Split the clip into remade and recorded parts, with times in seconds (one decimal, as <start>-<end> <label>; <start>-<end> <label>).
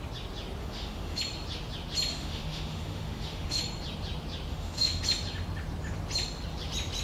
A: 0.0-0.6 recorded; 0.6-1.2 remade; 1.2-2.1 recorded; 2.1-3.6 remade; 3.6-4.5 recorded; 4.5-5.0 remade; 5.0-7.0 recorded